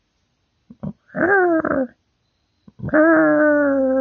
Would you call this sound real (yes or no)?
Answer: yes